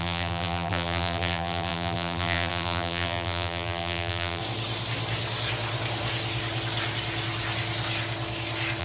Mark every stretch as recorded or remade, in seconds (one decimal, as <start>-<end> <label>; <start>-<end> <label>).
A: 0.0-4.4 remade; 4.4-8.8 recorded